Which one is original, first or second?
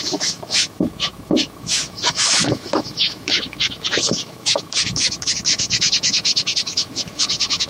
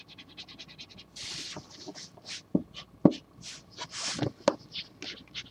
second